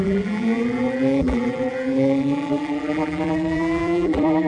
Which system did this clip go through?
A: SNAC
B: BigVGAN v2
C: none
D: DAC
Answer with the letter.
B